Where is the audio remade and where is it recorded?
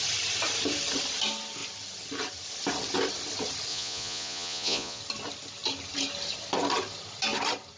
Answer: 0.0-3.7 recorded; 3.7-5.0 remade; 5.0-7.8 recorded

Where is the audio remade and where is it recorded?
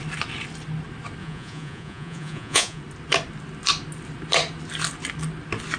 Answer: 0.0-1.2 recorded; 1.2-2.8 remade; 2.8-5.8 recorded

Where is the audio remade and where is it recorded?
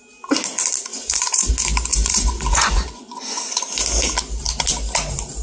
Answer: 0.0-0.9 recorded; 0.9-1.5 remade; 1.5-1.9 recorded; 1.9-3.6 remade; 3.6-5.4 recorded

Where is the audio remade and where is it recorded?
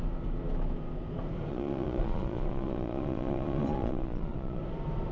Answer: 0.0-1.5 recorded; 1.5-4.6 remade; 4.6-5.1 recorded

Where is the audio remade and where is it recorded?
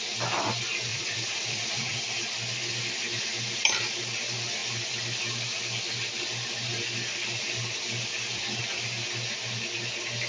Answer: 0.0-0.9 recorded; 0.9-2.0 remade; 2.0-10.3 recorded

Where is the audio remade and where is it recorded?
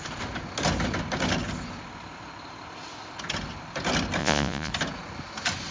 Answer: 0.0-4.2 recorded; 4.2-4.7 remade; 4.7-5.7 recorded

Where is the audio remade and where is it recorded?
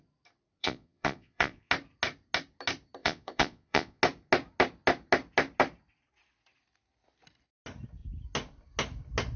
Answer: 0.0-0.6 recorded; 0.6-1.7 remade; 1.7-3.0 recorded; 3.0-4.0 remade; 4.0-9.4 recorded